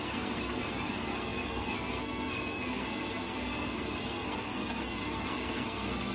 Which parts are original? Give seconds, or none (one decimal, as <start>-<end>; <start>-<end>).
none